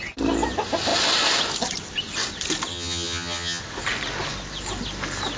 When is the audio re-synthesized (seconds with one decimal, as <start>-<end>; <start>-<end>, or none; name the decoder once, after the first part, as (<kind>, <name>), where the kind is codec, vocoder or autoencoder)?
2.7-3.6 (vocoder, HiFi-GAN)